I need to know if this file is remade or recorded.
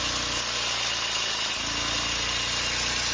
recorded